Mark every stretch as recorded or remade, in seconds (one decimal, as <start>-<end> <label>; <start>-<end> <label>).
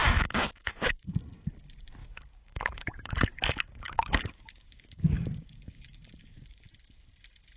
0.0-0.9 remade; 0.9-2.0 recorded; 2.0-6.6 remade; 6.6-7.6 recorded